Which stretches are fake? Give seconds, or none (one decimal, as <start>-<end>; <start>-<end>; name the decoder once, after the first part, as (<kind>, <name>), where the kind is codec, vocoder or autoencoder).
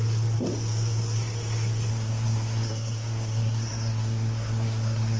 1.9-5.2 (codec, SNAC)